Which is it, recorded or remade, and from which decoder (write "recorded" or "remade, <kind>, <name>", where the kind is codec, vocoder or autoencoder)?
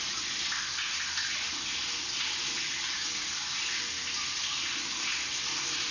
recorded